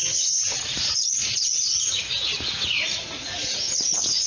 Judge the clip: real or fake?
fake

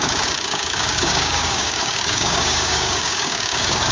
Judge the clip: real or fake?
fake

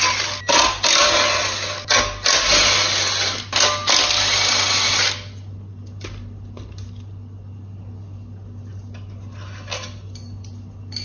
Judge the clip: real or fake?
real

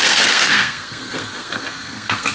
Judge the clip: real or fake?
fake